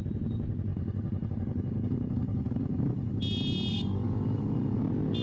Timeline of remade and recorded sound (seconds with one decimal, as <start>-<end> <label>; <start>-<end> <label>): 0.0-0.7 recorded; 0.7-3.2 remade; 3.2-3.7 recorded; 3.7-4.8 remade; 4.8-5.2 recorded